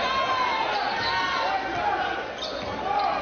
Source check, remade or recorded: recorded